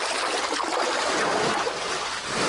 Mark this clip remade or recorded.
recorded